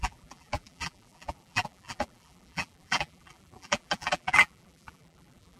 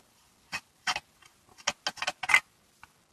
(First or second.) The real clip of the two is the second